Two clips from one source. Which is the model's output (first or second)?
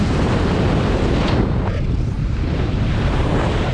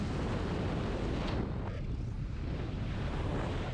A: first